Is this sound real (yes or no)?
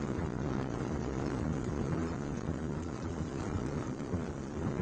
no